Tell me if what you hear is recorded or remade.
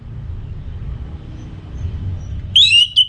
recorded